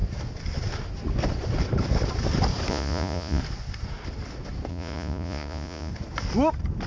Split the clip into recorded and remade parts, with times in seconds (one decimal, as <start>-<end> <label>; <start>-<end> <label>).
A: 0.0-2.7 recorded; 2.7-3.4 remade; 3.4-4.7 recorded; 4.7-5.9 remade; 5.9-6.9 recorded